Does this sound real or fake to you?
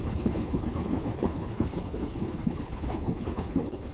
fake